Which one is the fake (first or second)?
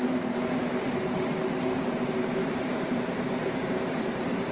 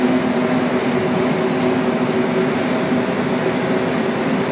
first